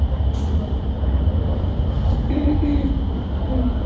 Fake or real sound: real